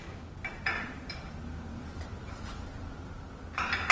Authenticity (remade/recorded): recorded